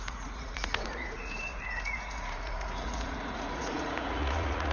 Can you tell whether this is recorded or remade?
remade